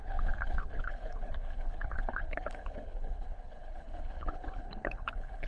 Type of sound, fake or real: fake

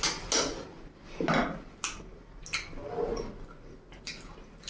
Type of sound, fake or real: real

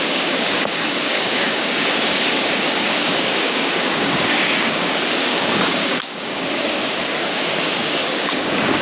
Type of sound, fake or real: fake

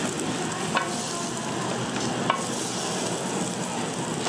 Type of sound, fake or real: real